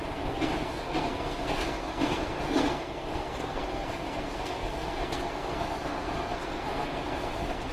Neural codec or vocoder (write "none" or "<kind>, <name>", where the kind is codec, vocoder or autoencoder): codec, SNAC